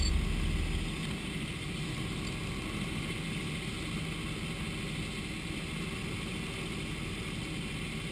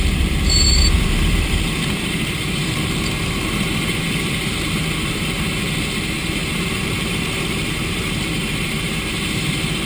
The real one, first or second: first